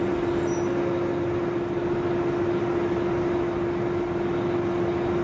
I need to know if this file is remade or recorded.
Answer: recorded